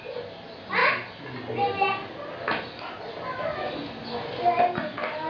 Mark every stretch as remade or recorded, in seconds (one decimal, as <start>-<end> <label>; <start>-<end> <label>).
0.0-5.3 recorded